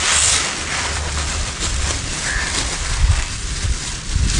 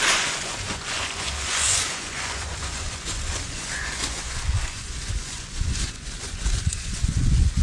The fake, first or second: second